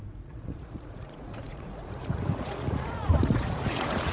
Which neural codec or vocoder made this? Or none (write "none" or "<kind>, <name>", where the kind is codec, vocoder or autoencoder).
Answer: vocoder, Vocos